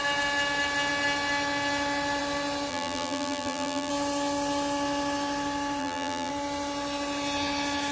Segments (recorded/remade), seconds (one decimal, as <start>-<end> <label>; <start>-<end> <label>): 0.0-2.7 recorded; 2.7-3.9 remade; 3.9-5.8 recorded; 5.8-6.3 remade; 6.3-7.9 recorded